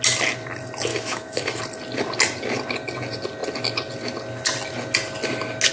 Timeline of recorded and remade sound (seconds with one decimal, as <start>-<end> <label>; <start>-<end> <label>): 0.0-0.9 recorded; 0.9-1.6 remade; 1.6-5.7 recorded